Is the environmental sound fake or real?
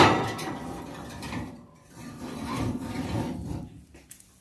fake